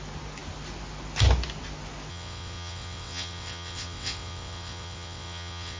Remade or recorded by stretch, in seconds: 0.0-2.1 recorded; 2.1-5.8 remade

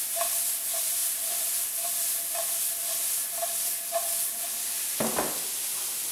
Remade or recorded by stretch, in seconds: 0.0-6.1 recorded

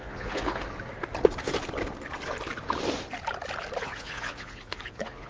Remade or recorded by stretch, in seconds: 0.0-0.6 remade; 0.6-3.8 recorded; 3.8-5.3 remade

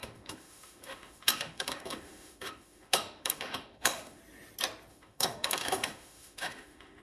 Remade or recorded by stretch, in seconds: 0.0-4.2 remade; 4.2-4.9 recorded; 4.9-7.0 remade

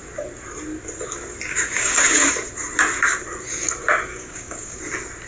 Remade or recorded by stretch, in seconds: 0.0-1.5 recorded; 1.5-2.3 remade; 2.3-4.1 recorded; 4.1-4.8 remade; 4.8-5.3 recorded

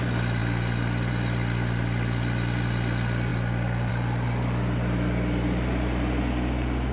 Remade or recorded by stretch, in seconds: 0.0-6.9 recorded